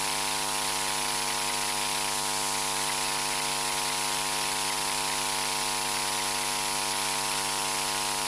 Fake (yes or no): no